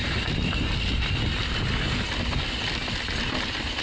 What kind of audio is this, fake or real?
real